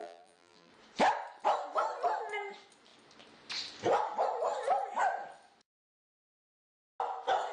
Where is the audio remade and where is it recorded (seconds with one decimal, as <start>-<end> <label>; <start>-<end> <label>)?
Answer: 0.0-0.7 remade; 0.7-7.5 recorded